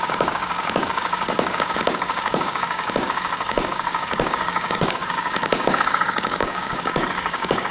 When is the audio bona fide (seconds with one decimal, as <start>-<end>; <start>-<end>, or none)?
none